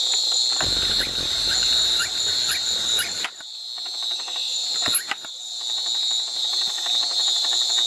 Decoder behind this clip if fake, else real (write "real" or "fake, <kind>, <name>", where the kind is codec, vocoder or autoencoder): real